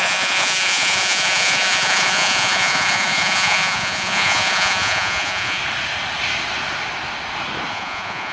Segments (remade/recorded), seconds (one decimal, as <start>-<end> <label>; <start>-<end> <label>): 0.0-5.6 remade; 5.6-7.7 recorded; 7.7-8.3 remade